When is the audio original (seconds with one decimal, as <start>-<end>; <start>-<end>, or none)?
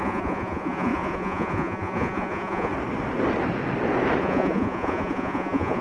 2.7-4.2